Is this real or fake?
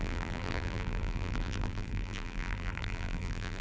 fake